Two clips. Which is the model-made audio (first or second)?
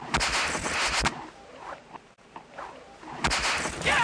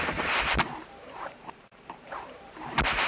second